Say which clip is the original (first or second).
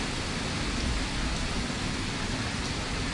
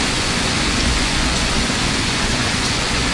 first